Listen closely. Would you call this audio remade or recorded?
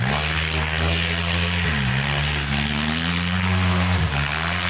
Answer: recorded